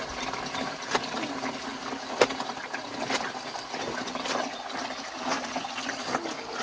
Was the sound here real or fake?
real